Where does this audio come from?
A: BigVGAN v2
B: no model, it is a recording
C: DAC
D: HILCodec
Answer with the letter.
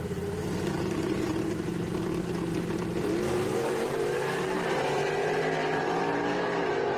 A